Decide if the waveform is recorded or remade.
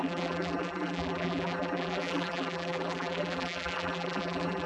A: remade